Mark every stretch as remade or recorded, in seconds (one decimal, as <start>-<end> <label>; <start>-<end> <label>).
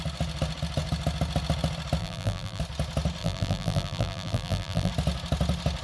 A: 0.0-2.0 recorded; 2.0-2.6 remade; 2.6-3.2 recorded; 3.2-4.9 remade; 4.9-5.8 recorded